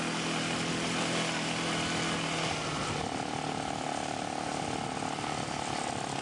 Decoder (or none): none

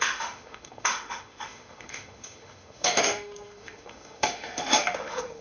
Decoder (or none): autoencoder, DAC-VAE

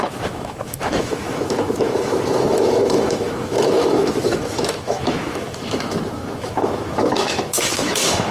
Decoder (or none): autoencoder, DAC-VAE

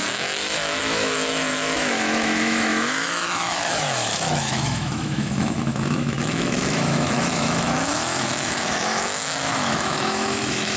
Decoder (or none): autoencoder, DAC-VAE